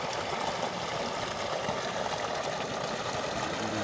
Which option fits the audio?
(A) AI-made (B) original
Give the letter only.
B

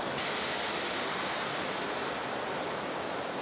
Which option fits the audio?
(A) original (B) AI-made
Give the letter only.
A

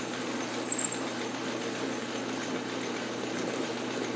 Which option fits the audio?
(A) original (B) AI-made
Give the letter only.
A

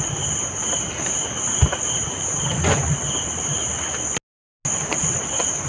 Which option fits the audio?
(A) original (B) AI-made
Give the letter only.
A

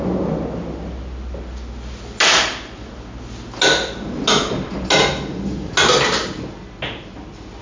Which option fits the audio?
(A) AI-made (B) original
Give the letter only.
B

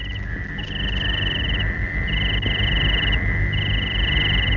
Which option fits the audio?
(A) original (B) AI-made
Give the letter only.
A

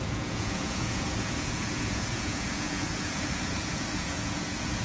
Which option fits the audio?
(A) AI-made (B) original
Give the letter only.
A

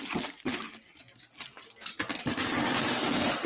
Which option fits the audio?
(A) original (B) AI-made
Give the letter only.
A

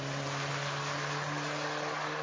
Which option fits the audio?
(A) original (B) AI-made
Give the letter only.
A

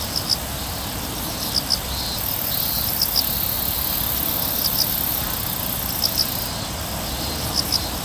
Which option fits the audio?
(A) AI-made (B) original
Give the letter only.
B